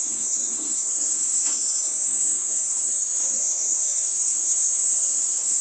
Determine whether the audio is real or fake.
fake